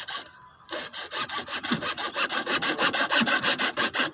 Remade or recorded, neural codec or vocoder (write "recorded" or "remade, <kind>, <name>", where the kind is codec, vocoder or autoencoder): recorded